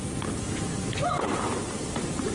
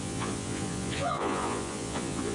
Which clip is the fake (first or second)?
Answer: second